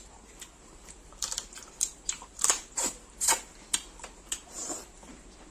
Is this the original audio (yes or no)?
no